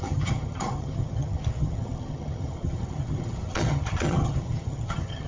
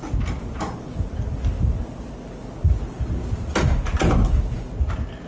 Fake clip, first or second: first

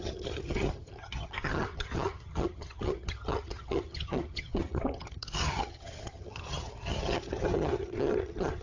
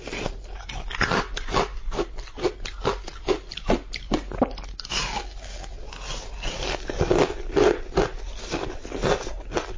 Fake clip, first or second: first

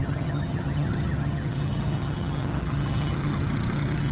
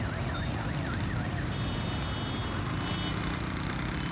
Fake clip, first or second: first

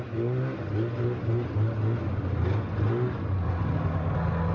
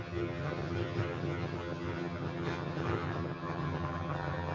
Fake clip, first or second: second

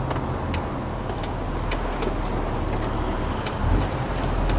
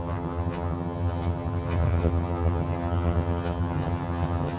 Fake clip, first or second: second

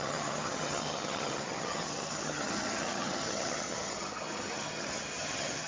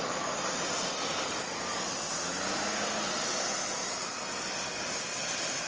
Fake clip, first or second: first